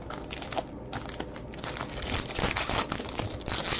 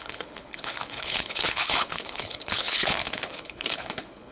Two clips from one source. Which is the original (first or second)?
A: first